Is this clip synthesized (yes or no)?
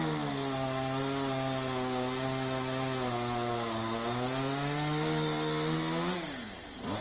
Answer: no